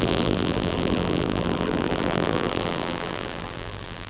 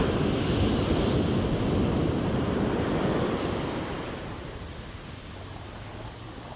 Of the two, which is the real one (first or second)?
second